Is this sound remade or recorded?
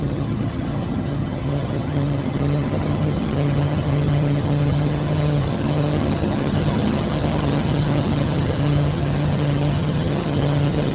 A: remade